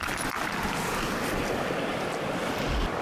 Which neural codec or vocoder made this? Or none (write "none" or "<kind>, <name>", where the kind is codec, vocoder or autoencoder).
none